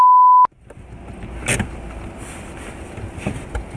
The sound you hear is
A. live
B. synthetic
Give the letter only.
A